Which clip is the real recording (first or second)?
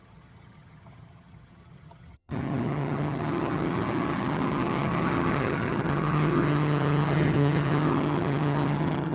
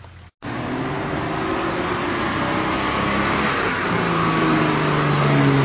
second